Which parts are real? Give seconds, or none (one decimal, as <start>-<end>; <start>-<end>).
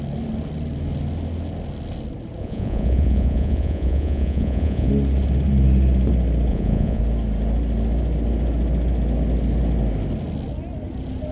0.0-2.4; 4.9-6.5; 7.0-11.3